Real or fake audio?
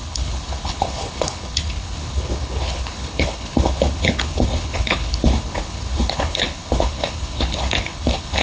fake